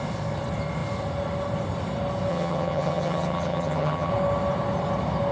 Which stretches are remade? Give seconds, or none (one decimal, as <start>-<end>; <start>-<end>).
2.3-4.1